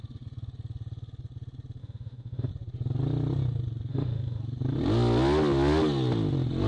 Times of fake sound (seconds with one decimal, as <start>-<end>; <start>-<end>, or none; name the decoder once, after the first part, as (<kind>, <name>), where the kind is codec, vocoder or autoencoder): 1.8-2.5 (autoencoder, DAC-VAE); 3.9-4.4